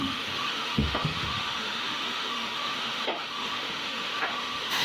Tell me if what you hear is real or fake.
fake